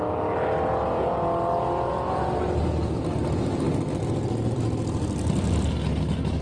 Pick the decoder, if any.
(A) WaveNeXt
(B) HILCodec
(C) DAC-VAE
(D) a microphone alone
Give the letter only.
D